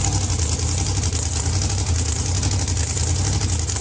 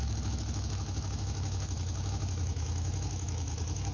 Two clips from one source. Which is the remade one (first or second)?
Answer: second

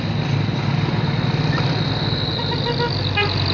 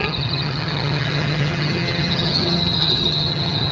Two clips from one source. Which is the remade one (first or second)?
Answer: second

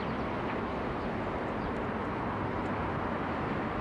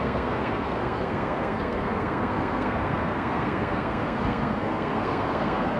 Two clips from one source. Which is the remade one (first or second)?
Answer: second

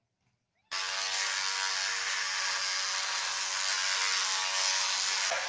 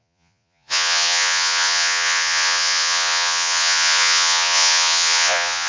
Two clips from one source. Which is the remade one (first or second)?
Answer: second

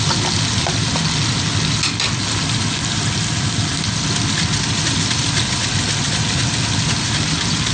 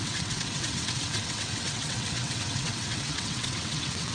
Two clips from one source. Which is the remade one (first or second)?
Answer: second